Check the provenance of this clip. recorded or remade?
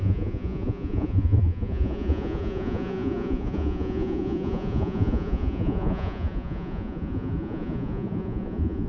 remade